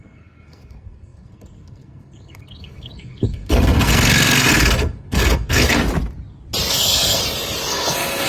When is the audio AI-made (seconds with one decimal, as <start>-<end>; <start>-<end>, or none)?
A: 0.0-5.8; 6.7-7.2; 7.7-8.3